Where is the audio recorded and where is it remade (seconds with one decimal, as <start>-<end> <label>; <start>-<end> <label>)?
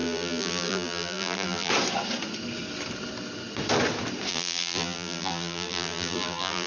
0.0-1.7 remade; 1.7-4.3 recorded; 4.3-6.7 remade